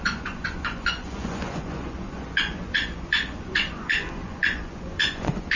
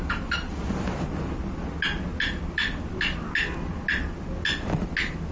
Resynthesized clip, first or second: first